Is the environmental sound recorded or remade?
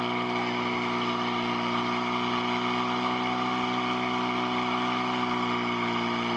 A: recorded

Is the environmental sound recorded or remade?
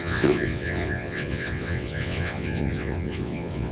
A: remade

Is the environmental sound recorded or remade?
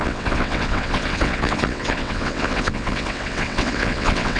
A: remade